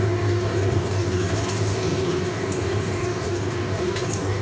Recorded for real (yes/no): no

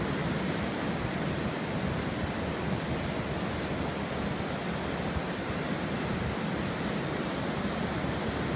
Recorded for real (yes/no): yes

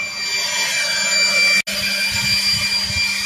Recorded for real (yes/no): yes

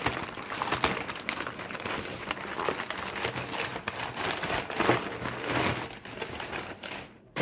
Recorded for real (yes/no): yes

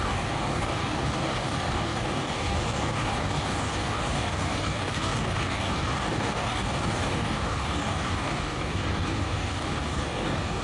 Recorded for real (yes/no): no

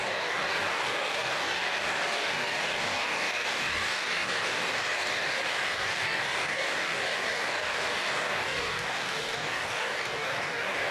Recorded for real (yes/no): no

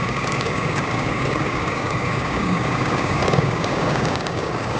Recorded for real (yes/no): no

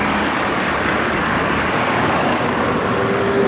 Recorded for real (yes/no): no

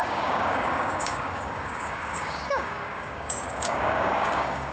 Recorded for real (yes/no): no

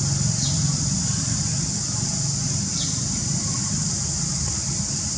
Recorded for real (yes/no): yes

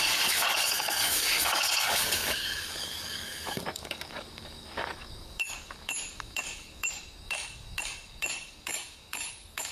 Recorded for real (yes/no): no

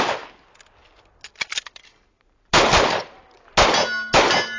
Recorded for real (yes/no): yes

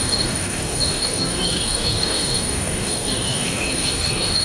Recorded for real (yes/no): no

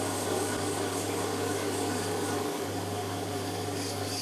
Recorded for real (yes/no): no